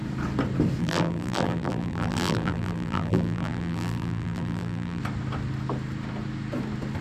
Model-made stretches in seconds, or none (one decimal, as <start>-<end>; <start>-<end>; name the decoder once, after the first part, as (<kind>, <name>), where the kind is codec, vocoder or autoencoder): 0.8-5.0 (vocoder, BigVGAN v2)